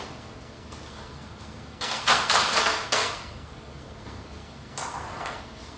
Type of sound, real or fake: fake